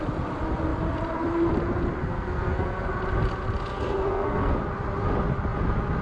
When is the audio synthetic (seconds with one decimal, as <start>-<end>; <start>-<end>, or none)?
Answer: 2.0-2.9; 3.7-4.5